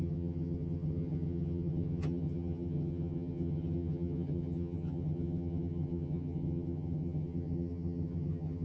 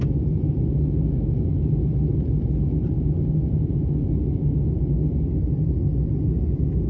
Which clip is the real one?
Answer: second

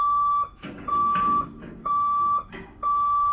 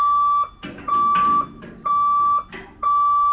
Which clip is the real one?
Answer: second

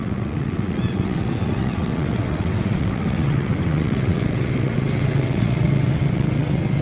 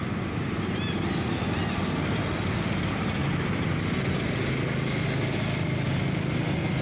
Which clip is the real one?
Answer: second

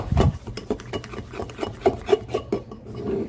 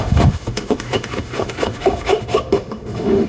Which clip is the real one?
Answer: first